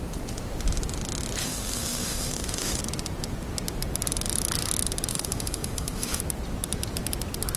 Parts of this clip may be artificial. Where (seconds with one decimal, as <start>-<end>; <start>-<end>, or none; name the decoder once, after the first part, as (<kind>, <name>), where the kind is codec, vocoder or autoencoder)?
1.4-2.8 (autoencoder, DAC-VAE); 5.1-6.2